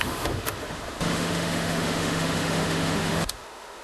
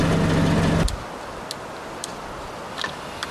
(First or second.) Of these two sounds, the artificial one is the first